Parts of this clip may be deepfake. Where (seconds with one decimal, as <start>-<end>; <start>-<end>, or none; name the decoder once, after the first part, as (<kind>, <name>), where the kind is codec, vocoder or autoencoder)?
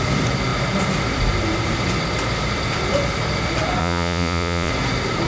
3.8-4.7 (vocoder, Vocos)